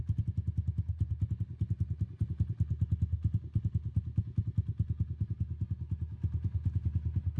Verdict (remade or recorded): recorded